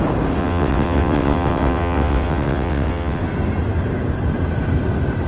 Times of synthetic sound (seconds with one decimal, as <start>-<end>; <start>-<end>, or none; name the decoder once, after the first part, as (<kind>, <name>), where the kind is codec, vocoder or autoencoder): 0.4-3.2 (vocoder, WaveNeXt)